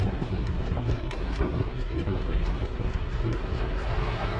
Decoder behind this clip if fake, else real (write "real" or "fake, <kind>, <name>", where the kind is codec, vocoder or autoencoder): fake, codec, SNAC